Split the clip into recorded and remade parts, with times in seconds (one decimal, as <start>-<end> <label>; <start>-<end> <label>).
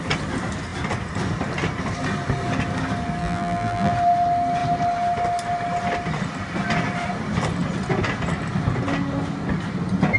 0.0-3.2 recorded; 3.2-3.9 remade; 3.9-10.2 recorded